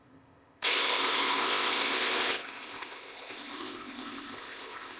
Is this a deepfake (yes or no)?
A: yes